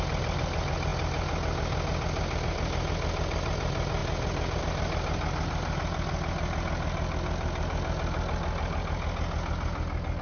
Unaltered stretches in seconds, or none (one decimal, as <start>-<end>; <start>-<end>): 0.0-10.2